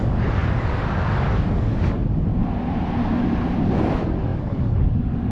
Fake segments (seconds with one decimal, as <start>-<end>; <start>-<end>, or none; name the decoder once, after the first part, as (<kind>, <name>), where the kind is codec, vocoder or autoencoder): 0.0-2.3 (codec, DAC); 3.8-5.3